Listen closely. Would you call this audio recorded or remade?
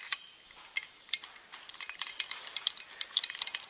recorded